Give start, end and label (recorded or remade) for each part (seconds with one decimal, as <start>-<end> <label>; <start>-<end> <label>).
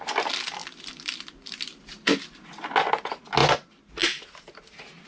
0.0-0.6 recorded; 0.6-2.2 remade; 2.2-5.1 recorded